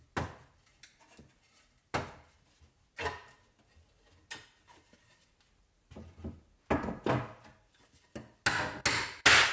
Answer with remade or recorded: recorded